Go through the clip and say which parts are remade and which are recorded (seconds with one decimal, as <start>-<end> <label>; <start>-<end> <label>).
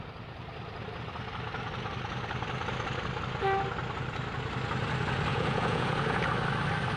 0.0-5.3 recorded; 5.3-6.2 remade; 6.2-7.0 recorded